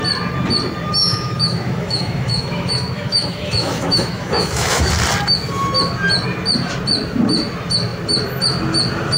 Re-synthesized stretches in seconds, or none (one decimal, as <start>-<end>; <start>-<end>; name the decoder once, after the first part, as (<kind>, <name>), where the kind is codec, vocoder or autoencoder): 1.0-4.9 (autoencoder, DAC-VAE)